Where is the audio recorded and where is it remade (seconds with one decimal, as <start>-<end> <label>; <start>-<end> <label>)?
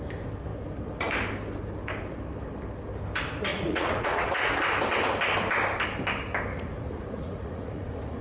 0.0-3.5 recorded; 3.5-4.6 remade; 4.6-6.5 recorded; 6.5-8.2 remade